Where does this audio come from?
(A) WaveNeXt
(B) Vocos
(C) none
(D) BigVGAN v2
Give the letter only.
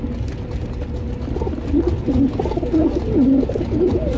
C